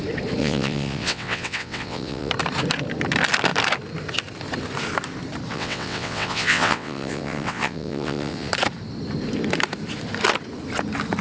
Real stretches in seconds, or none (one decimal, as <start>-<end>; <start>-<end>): 0.0-0.4; 2.3-5.5; 8.5-11.2